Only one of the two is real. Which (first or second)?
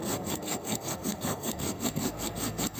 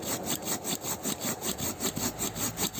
second